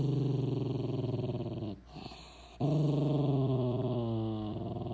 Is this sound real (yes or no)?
yes